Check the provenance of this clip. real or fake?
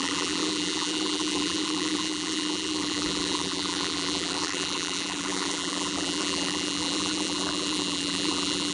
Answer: fake